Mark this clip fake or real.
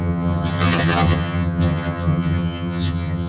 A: fake